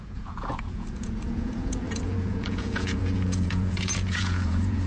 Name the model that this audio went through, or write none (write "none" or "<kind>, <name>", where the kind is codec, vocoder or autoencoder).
vocoder, Vocos